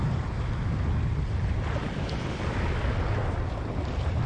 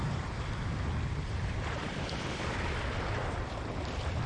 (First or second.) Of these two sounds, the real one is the first